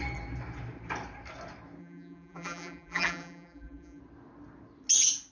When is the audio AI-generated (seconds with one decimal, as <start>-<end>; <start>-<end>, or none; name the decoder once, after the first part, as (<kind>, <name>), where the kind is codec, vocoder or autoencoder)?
1.8-4.0 (vocoder, BigVGAN v2)

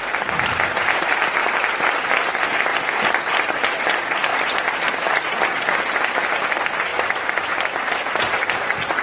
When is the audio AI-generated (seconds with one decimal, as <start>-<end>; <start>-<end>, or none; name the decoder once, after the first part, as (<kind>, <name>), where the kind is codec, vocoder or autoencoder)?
1.4-2.3 (vocoder, BigVGAN v2); 2.7-3.8; 4.3-5.1; 6.9-8.2

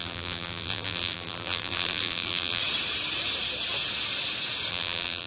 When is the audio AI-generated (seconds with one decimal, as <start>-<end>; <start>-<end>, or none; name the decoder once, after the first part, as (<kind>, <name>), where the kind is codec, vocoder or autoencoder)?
0.0-2.6 (vocoder, BigVGAN v2); 4.7-5.3